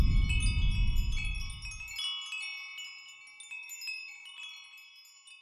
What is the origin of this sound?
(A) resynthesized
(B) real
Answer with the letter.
B